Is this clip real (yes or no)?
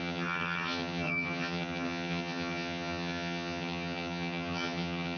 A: no